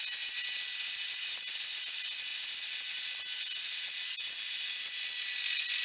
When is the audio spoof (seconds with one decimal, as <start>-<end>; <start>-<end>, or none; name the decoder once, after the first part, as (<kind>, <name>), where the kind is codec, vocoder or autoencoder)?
none